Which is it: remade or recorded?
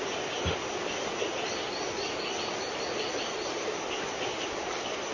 recorded